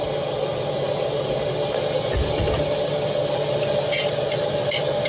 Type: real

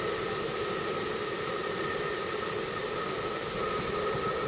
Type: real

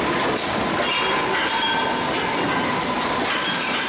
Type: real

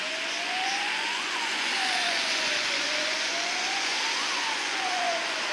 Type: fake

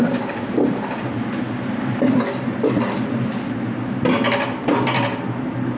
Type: real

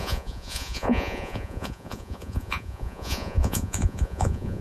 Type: fake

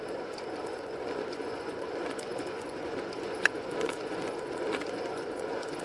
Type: fake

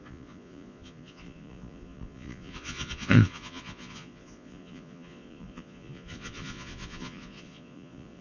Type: fake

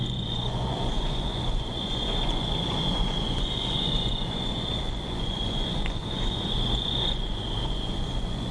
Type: fake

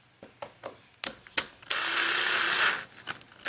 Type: real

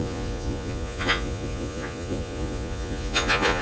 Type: fake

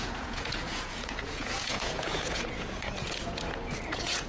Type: fake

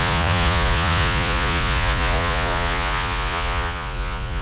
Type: fake